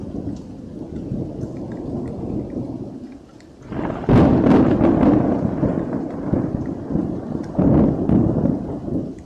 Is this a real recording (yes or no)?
yes